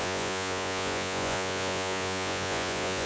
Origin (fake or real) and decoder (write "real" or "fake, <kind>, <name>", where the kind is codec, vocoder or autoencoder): fake, vocoder, Vocos